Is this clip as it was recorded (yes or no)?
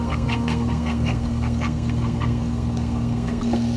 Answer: no